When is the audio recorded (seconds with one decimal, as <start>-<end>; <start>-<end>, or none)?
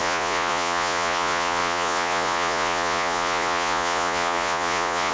none